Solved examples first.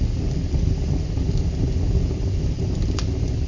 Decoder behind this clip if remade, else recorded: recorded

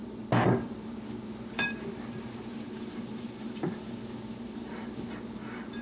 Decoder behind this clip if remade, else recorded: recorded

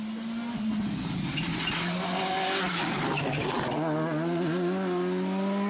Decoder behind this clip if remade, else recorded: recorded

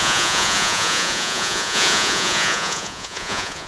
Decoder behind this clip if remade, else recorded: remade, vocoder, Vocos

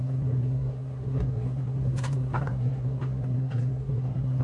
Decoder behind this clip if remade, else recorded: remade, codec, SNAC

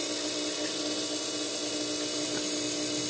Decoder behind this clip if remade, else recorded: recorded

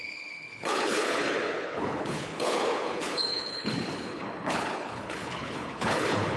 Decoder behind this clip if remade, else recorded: remade, codec, HILCodec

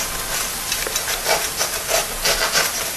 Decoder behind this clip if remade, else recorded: recorded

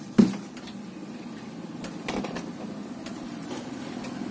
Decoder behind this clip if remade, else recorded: remade, vocoder, BigVGAN v2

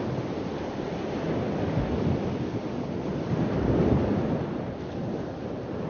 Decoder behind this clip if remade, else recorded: recorded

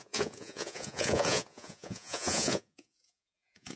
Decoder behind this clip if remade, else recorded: remade, vocoder, Vocos